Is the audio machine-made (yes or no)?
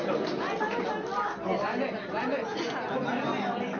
no